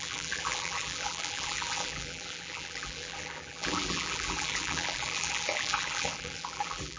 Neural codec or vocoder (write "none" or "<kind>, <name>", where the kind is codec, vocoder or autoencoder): vocoder, BigVGAN v2